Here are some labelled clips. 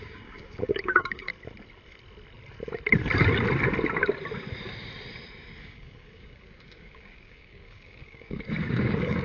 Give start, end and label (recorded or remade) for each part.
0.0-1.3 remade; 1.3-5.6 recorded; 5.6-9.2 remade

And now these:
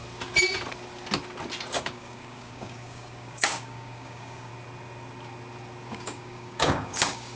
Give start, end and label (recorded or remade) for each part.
0.0-1.8 recorded; 1.8-4.5 remade; 4.5-5.9 recorded; 5.9-7.4 remade

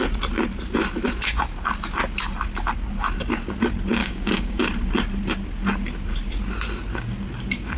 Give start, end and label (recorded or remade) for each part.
0.0-4.0 recorded; 4.0-4.6 remade; 4.6-7.8 recorded

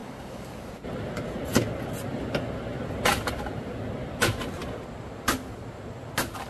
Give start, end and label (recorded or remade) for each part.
0.0-0.7 remade; 0.7-6.5 recorded

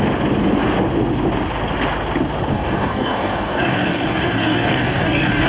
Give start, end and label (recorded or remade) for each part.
0.0-2.5 recorded; 2.5-5.5 remade

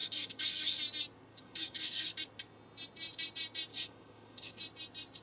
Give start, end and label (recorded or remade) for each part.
0.0-0.8 remade; 0.8-1.3 recorded; 1.3-2.1 remade; 2.1-3.7 recorded; 3.7-4.6 remade; 4.6-5.2 recorded

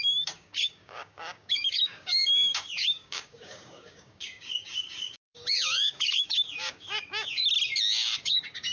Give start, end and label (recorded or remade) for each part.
0.0-7.4 remade; 7.4-8.2 recorded; 8.2-8.7 remade